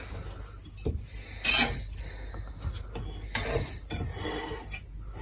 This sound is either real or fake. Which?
real